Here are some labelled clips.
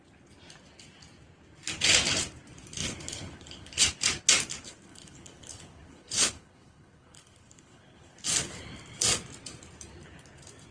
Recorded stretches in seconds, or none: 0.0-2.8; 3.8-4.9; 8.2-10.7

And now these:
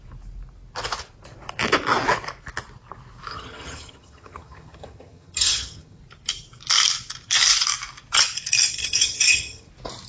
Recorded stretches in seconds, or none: 0.0-3.3; 6.0-8.8; 9.7-10.1

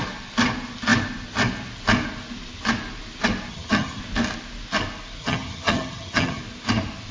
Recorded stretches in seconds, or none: 0.0-3.5; 4.0-5.2; 6.4-7.1

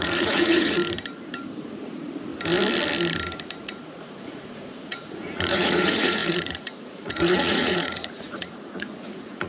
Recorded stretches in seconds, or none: 0.8-1.5; 2.3-3.6

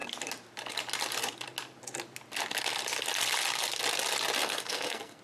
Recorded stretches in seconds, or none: 0.0-4.4

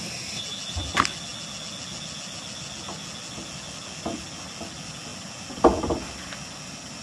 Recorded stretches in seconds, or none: 0.0-7.0